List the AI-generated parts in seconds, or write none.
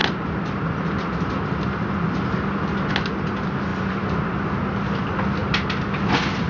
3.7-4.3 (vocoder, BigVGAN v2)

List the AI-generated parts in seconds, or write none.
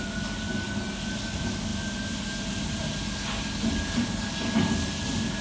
none